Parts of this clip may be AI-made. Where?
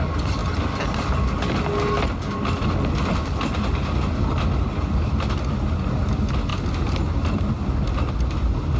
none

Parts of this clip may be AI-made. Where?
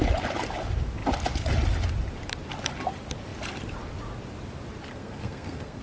4.9-5.8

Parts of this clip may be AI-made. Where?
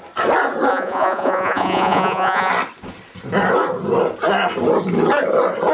0.7-2.5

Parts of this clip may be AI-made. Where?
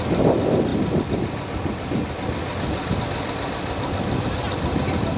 none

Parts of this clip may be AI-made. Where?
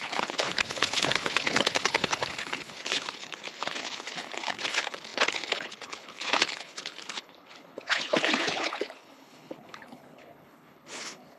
0.0-11.4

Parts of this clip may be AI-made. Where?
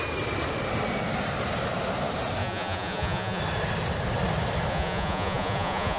2.4-3.4; 4.7-6.0